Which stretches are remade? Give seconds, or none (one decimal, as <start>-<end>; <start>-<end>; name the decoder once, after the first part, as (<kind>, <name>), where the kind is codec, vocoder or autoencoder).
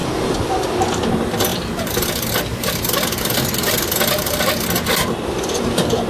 2.5-4.5 (vocoder, BigVGAN v2)